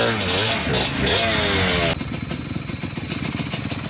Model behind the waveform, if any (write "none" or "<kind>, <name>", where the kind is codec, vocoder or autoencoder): none